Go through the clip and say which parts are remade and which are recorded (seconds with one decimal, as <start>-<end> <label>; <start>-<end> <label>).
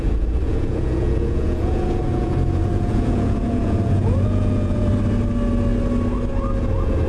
0.0-4.9 remade; 4.9-6.6 recorded; 6.6-7.1 remade